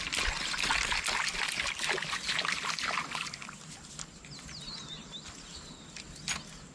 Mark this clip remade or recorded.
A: recorded